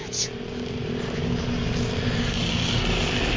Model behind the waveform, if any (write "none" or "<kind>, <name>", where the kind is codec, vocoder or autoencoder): none